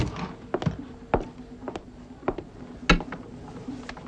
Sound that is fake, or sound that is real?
real